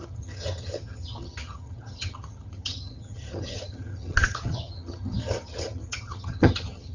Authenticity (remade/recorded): remade